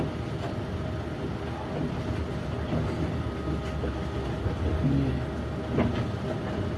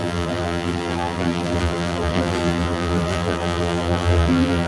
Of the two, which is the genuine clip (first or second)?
first